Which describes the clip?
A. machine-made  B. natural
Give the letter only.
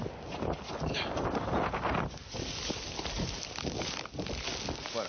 B